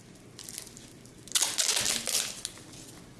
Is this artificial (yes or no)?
no